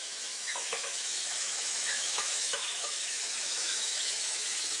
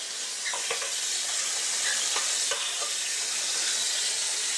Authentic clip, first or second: second